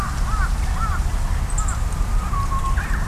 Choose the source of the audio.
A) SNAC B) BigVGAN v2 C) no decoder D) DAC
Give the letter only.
C